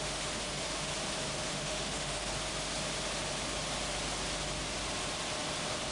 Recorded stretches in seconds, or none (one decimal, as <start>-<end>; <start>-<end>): 0.9-1.5; 2.3-5.9